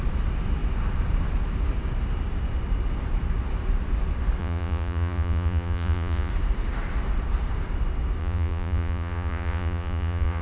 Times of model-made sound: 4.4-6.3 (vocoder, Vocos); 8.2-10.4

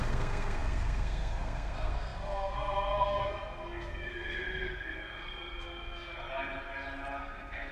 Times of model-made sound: 0.0-6.1 (codec, SNAC); 7.2-7.7

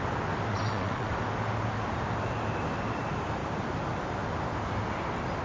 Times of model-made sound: 0.5-1.1 (vocoder, WaveNeXt)